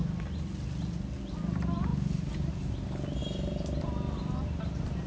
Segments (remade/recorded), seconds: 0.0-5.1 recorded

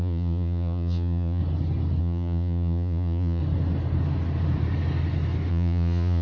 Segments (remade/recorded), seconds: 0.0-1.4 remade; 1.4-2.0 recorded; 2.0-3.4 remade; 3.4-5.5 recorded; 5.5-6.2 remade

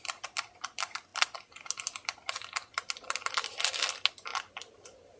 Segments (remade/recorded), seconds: 0.0-5.2 recorded

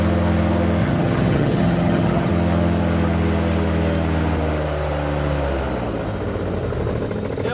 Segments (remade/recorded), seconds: 0.0-0.8 recorded; 0.8-2.3 remade; 2.3-7.5 recorded